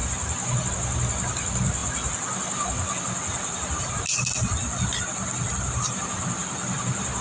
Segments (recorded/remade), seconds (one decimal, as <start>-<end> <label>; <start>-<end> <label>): 0.0-7.2 recorded